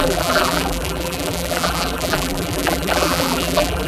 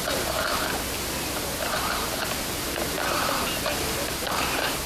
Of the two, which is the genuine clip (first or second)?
second